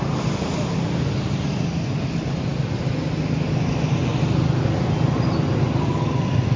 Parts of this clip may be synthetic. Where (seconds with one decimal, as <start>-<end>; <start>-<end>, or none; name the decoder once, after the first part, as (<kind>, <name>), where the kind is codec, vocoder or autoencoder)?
none